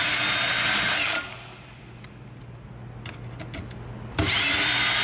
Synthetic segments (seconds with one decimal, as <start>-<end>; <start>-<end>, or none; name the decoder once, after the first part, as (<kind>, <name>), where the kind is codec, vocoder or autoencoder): none